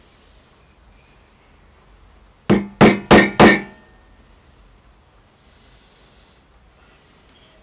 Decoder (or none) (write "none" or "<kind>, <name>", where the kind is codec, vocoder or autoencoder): none